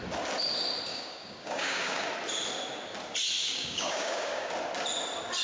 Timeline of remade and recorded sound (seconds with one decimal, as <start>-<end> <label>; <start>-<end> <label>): 0.0-0.9 recorded; 0.9-2.1 remade; 2.1-3.4 recorded; 3.4-4.5 remade; 4.5-5.4 recorded

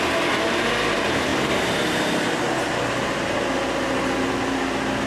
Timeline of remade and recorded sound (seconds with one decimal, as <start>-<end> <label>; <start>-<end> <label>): 0.0-5.1 recorded

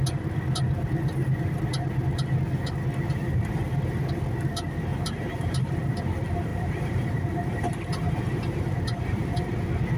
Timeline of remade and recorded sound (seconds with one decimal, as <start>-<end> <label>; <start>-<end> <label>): 0.0-4.9 recorded; 4.9-5.7 remade; 5.7-6.5 recorded; 6.5-9.2 remade; 9.2-10.0 recorded

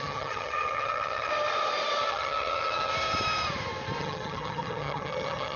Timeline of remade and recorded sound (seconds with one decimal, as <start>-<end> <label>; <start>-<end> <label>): 0.0-1.3 remade; 1.3-2.1 recorded; 2.1-2.9 remade; 2.9-4.0 recorded; 4.0-5.6 remade